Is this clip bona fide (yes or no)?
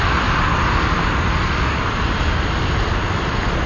yes